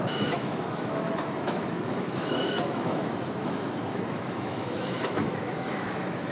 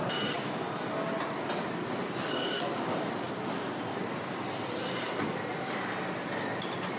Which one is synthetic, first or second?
first